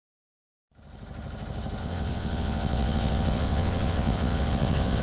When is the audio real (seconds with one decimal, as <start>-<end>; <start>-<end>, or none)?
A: 0.0-1.8